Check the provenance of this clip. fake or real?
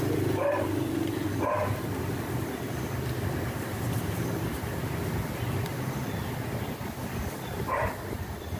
fake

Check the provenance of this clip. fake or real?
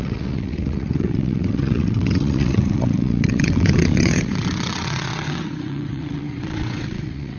fake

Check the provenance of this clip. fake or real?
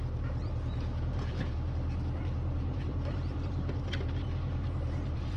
fake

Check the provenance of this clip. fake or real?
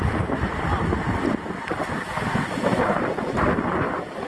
real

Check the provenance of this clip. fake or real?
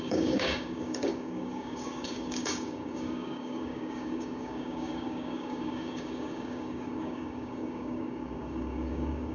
fake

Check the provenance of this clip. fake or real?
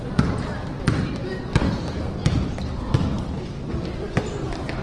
fake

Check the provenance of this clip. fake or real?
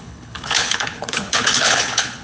fake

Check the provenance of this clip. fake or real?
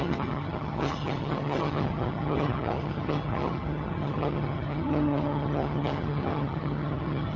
fake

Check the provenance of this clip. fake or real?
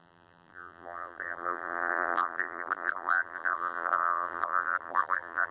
fake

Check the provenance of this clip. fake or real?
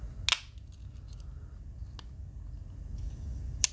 real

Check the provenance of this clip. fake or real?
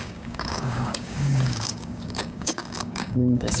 fake